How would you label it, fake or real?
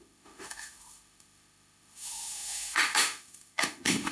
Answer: fake